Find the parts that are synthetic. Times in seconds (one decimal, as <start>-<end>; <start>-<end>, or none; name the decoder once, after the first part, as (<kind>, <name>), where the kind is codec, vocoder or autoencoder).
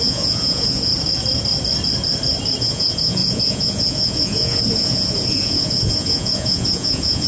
0.0-0.9 (vocoder, Vocos); 2.6-7.3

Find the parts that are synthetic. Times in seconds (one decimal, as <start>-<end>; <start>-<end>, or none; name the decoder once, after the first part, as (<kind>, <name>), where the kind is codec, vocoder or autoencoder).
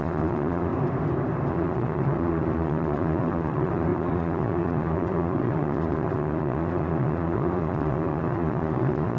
0.0-0.7 (vocoder, Vocos); 1.5-9.2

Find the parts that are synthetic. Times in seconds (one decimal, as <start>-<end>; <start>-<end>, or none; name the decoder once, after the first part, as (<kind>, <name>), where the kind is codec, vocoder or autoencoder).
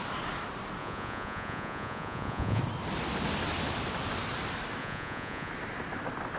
0.8-2.6 (vocoder, Vocos); 4.8-5.5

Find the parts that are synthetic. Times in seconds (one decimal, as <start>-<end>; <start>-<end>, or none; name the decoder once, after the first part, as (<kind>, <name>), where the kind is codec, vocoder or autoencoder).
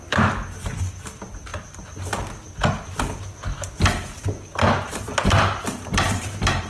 none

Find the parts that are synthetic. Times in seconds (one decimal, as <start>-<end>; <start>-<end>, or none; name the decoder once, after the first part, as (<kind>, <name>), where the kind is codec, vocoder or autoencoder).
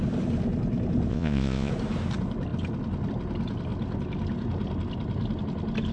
1.1-1.7 (vocoder, Vocos)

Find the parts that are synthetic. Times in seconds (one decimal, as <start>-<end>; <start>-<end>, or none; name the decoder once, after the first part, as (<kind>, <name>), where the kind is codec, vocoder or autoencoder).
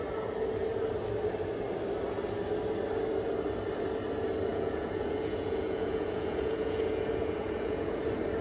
4.5-8.0 (vocoder, Vocos)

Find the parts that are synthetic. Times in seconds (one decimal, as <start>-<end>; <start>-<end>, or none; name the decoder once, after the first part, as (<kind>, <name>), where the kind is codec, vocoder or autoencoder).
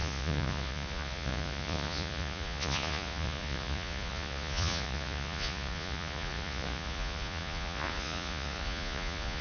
0.0-9.4 (vocoder, Vocos)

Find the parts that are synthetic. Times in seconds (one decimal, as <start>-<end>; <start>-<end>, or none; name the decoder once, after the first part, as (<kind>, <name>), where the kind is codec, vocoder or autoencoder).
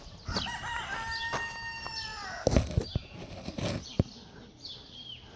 none